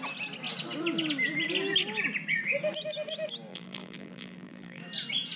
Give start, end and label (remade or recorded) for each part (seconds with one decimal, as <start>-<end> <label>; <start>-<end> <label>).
0.0-3.5 recorded; 3.5-4.8 remade; 4.8-5.4 recorded